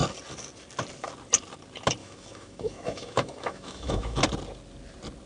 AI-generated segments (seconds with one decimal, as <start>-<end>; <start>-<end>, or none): 2.0-4.2